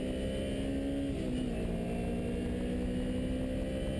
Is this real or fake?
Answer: real